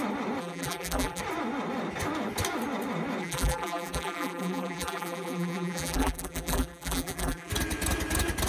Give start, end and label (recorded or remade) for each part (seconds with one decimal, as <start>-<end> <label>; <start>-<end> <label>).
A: 0.0-0.4 recorded; 0.4-1.2 remade; 1.2-3.2 recorded; 3.2-7.5 remade; 7.5-8.5 recorded